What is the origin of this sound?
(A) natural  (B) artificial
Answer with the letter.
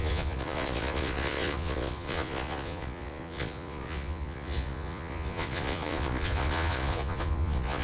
B